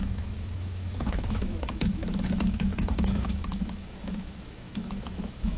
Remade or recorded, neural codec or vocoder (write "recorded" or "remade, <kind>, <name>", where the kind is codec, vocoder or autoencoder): remade, autoencoder, DAC-VAE